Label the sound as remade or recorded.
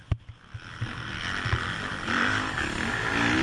recorded